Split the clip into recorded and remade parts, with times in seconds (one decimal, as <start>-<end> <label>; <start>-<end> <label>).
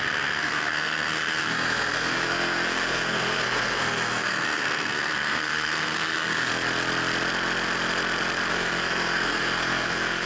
0.0-6.5 remade; 6.5-8.5 recorded; 8.5-10.3 remade